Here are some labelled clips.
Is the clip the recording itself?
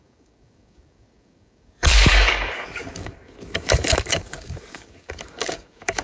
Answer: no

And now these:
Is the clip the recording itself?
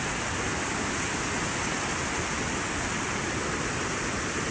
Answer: yes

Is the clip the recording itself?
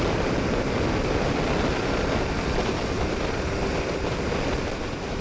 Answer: yes